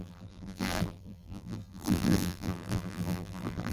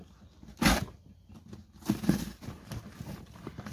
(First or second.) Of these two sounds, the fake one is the first